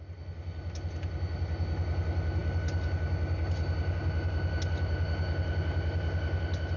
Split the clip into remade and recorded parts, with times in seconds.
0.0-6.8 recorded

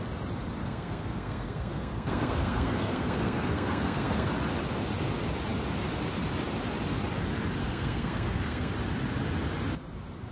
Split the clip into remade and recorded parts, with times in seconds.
0.0-0.6 recorded; 0.6-4.3 remade; 4.3-7.6 recorded; 7.6-8.7 remade; 8.7-10.3 recorded